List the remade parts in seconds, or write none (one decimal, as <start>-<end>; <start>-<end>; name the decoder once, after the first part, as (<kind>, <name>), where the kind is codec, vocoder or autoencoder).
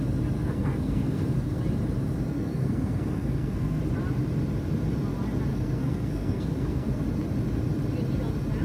0.4-1.6 (codec, SNAC); 2.3-3.8; 5.5-7.0